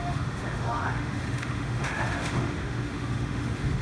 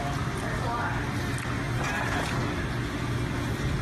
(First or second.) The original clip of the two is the second